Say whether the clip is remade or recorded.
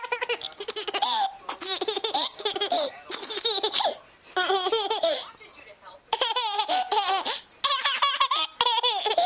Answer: recorded